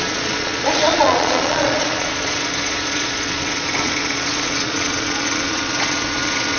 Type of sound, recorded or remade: remade